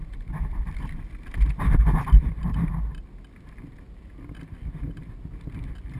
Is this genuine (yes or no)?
yes